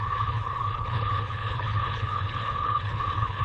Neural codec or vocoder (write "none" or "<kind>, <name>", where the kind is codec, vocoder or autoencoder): codec, HILCodec